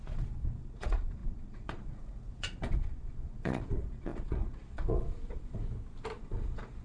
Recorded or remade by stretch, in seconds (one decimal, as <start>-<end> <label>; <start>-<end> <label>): 0.0-5.6 remade; 5.6-6.2 recorded; 6.2-6.8 remade